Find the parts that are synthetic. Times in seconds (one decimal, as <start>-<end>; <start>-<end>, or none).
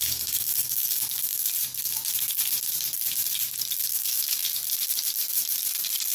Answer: 0.0-1.5; 3.9-4.4